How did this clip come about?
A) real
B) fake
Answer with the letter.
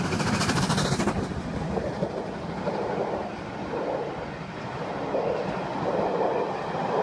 A